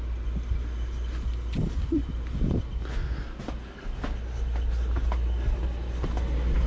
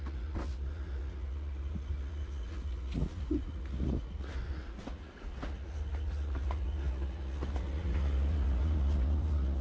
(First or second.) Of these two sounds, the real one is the first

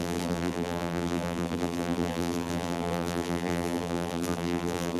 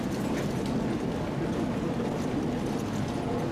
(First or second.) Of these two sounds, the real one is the second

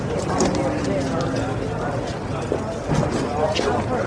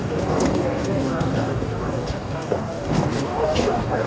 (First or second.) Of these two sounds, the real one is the first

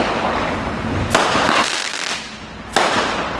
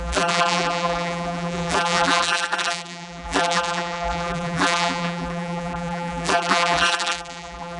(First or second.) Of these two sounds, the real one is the first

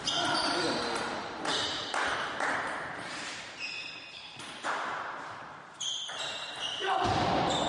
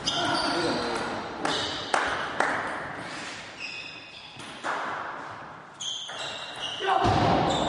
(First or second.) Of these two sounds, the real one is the second